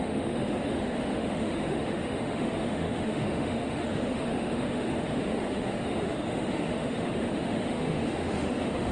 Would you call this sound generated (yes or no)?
yes